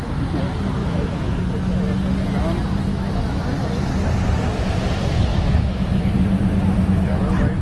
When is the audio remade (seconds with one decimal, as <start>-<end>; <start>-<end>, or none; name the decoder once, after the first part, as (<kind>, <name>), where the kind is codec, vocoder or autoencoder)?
0.8-1.4 (autoencoder, DAC-VAE); 2.9-3.4; 5.3-6.1